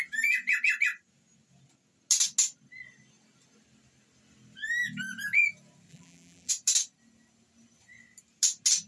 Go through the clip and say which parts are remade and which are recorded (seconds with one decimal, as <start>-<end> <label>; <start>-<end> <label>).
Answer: 0.0-5.9 recorded; 5.9-6.5 remade; 6.5-8.9 recorded